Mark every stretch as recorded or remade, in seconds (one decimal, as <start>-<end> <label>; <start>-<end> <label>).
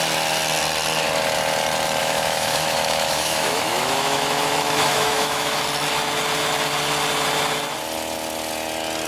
0.0-2.0 recorded; 2.0-5.6 remade; 5.6-9.1 recorded